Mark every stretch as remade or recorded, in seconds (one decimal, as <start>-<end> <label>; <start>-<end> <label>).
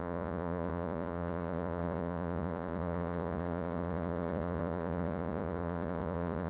0.0-6.5 remade